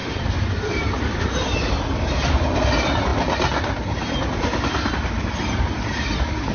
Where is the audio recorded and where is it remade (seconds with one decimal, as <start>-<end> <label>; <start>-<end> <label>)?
0.0-0.7 remade; 0.7-6.5 recorded